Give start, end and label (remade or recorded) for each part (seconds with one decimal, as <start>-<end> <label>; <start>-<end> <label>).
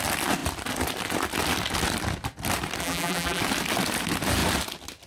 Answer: 0.0-2.8 recorded; 2.8-3.4 remade; 3.4-5.1 recorded